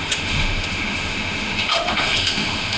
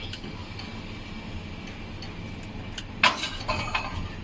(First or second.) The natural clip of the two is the second